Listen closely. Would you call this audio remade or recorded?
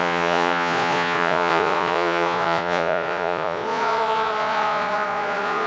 remade